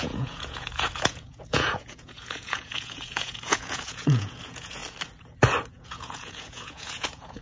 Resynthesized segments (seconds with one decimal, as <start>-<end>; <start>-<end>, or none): 0.0-4.8; 5.7-7.4